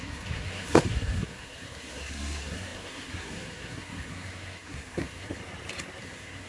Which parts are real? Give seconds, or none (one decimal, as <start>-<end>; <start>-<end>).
5.4-6.0